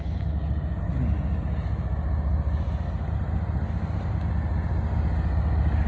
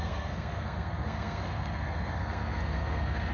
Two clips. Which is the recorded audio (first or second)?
first